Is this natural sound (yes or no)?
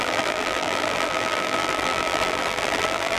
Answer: no